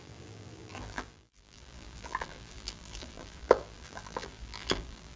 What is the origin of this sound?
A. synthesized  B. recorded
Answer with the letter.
A